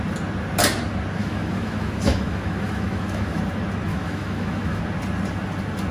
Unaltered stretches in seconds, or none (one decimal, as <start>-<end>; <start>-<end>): 0.0-1.2; 3.4-3.9; 4.8-5.9